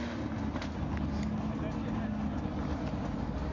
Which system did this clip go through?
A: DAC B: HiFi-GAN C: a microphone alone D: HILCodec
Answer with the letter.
C